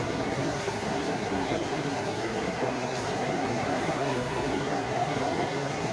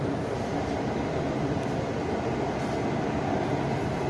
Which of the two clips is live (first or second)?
second